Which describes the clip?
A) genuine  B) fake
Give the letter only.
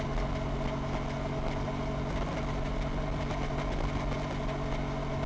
A